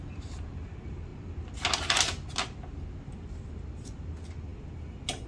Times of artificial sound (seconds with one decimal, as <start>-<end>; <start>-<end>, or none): none